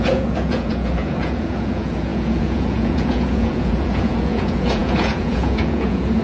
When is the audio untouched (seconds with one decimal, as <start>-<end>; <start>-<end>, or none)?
none